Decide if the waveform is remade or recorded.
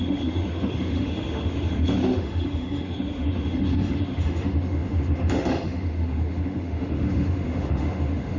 remade